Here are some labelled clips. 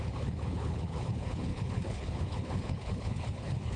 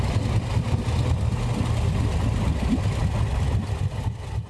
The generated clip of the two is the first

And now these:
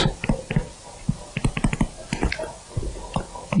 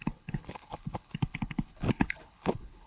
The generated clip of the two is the second